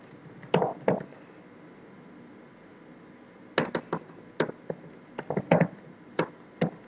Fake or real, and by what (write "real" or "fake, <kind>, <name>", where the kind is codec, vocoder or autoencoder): real